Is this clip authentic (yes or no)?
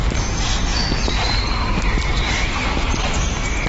yes